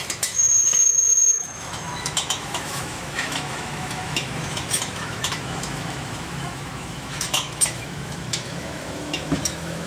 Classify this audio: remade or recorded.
remade